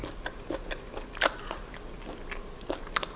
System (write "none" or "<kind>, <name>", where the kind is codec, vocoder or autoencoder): none